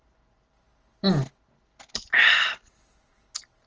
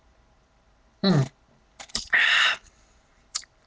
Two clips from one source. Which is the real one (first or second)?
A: first